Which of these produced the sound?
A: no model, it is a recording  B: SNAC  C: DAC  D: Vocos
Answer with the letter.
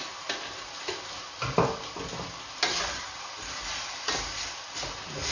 A